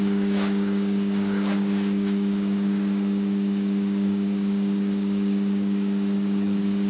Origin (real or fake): fake